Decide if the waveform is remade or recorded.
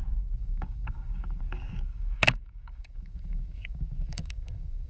remade